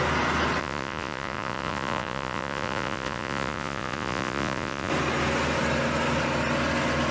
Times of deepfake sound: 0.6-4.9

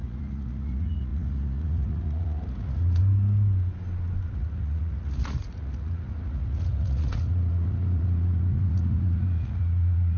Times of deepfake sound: 0.0-3.0; 4.2-10.2

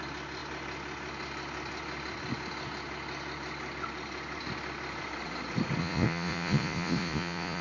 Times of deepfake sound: 5.8-7.6

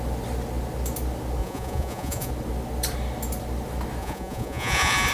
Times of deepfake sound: 1.4-2.3; 4.0-5.1

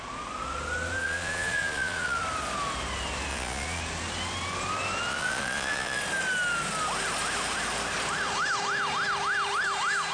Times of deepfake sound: 1.0-2.2; 3.3-3.8; 5.1-6.0

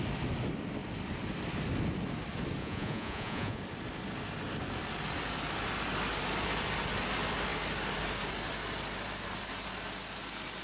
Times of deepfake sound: 2.6-3.6